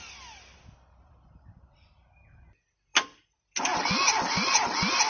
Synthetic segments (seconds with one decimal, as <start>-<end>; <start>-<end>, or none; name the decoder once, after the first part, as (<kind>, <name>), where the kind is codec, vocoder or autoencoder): none